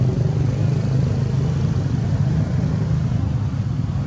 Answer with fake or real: real